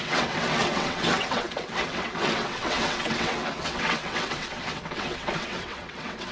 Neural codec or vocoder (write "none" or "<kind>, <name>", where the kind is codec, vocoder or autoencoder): vocoder, WaveNeXt